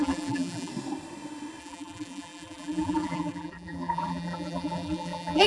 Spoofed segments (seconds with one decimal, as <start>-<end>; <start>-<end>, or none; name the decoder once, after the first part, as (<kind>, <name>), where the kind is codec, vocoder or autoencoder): 0.0-0.7 (vocoder, BigVGAN v2); 1.6-5.5